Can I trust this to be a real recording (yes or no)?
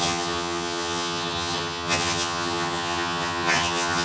no